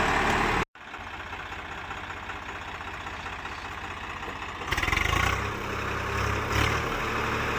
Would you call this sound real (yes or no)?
yes